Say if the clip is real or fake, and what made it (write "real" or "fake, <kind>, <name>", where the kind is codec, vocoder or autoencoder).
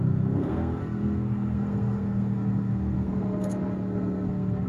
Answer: fake, codec, SNAC